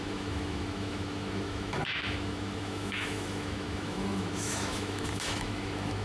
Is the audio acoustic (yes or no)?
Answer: no